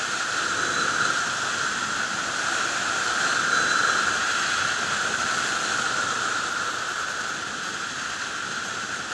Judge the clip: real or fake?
real